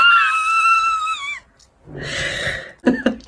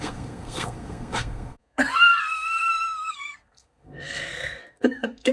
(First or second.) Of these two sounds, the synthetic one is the second